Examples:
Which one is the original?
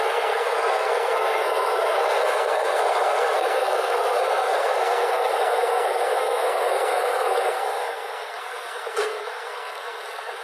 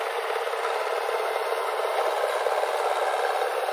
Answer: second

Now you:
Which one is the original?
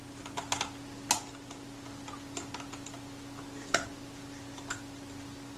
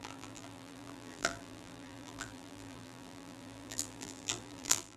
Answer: first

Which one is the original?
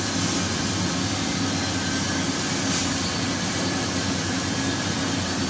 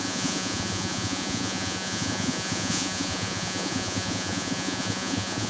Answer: first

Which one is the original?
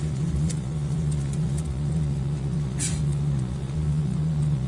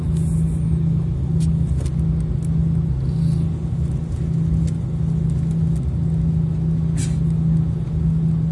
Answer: second